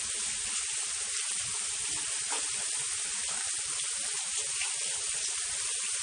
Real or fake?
real